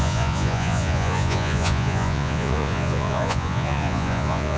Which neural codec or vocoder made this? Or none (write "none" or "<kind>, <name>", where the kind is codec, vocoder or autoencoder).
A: vocoder, Vocos